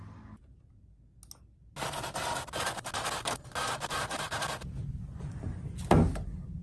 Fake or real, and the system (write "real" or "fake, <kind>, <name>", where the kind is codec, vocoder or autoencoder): real